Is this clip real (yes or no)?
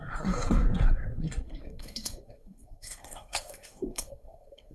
no